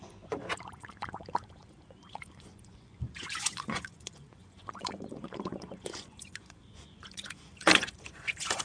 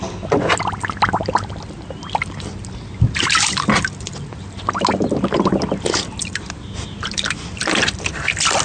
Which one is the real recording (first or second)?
second